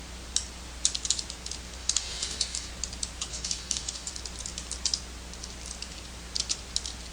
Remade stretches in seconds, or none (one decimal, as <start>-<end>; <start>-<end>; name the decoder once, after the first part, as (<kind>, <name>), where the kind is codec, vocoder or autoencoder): 1.8-2.7 (codec, DAC); 3.3-4.1